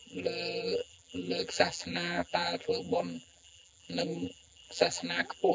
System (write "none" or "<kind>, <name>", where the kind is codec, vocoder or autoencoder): vocoder, BigVGAN v2